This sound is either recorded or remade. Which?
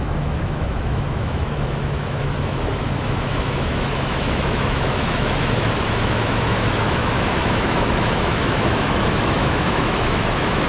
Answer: remade